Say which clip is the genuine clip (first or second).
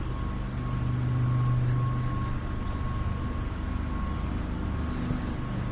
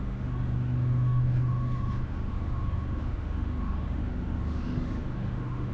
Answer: first